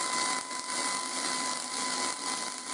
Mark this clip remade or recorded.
recorded